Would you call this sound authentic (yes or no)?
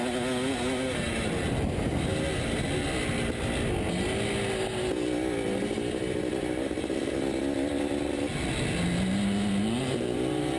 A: yes